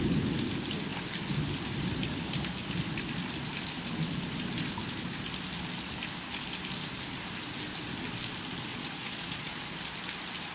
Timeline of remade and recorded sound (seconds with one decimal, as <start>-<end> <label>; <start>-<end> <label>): 0.0-8.7 recorded; 8.7-9.6 remade; 9.6-10.5 recorded